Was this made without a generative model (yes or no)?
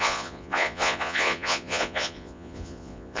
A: no